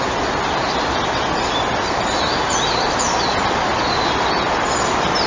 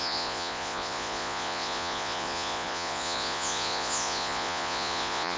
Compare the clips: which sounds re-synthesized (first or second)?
second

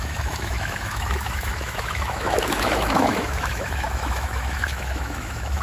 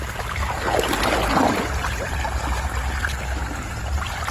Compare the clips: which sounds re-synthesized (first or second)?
first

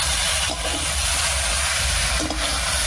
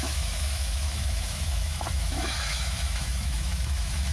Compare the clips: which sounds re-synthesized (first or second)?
second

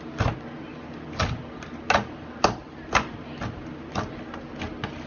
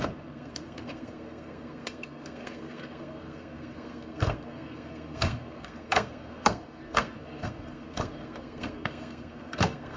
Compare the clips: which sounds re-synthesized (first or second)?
second